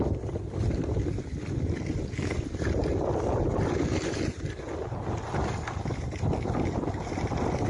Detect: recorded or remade recorded